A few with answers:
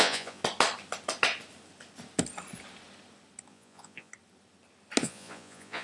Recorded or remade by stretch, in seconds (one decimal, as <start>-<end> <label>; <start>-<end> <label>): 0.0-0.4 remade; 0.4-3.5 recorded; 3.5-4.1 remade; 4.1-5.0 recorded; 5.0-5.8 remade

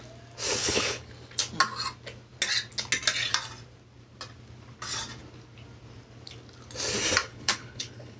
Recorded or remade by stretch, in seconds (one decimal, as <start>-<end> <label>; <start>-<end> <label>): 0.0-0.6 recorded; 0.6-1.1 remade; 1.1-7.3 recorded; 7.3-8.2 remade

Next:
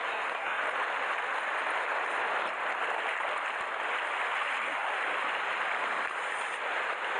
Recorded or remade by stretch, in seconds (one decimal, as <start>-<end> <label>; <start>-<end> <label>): 0.0-0.6 remade; 0.6-7.2 recorded